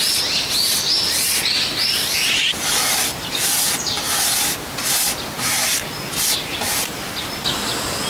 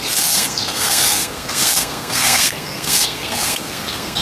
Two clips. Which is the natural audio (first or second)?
first